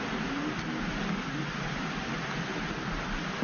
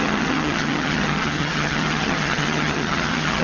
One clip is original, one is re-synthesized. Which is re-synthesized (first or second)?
second